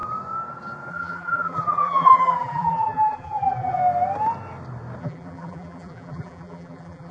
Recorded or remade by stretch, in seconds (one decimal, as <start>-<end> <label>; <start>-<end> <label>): 0.0-0.9 recorded; 0.9-3.8 remade; 3.8-5.0 recorded; 5.0-7.1 remade